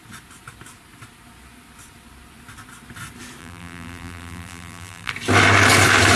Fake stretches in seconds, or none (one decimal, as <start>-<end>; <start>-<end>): 3.4-5.1